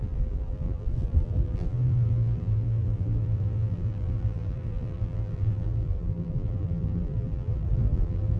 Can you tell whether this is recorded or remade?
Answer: remade